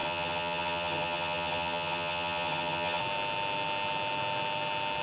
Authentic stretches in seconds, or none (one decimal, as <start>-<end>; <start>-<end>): 3.0-5.0